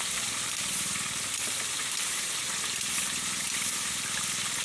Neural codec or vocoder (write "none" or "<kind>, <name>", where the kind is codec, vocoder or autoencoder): none